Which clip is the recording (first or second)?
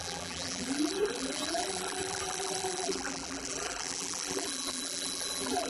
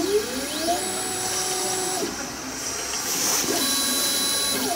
second